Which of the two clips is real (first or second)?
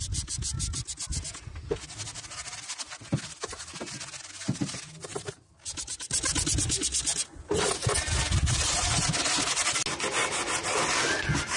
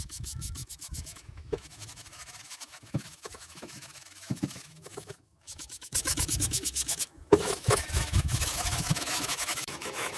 first